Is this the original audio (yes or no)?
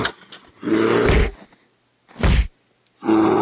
yes